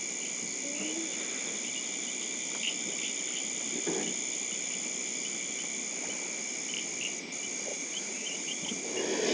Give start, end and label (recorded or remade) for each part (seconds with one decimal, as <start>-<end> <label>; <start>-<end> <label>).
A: 0.0-7.7 recorded; 7.7-8.8 remade; 8.8-9.3 recorded